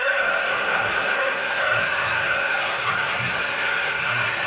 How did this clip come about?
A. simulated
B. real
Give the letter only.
A